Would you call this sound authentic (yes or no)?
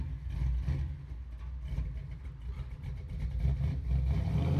yes